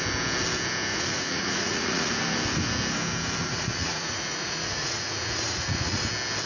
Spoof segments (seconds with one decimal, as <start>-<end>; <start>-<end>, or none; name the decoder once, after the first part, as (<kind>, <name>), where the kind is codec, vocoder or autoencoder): 0.9-2.1 (vocoder, Vocos); 3.4-6.0